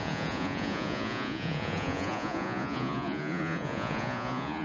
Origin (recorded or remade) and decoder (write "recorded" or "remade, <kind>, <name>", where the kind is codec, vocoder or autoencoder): remade, vocoder, Vocos